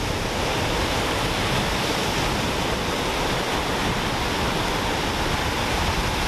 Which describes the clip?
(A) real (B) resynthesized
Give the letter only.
A